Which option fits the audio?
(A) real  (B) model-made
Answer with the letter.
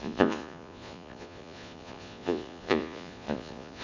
B